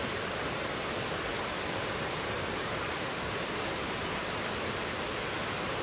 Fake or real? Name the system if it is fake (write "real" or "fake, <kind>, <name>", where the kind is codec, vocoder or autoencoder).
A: real